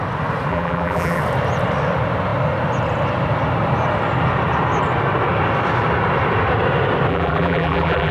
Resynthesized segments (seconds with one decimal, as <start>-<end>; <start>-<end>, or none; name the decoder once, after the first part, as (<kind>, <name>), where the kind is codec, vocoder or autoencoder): 0.5-1.2 (vocoder, BigVGAN v2); 7.1-8.1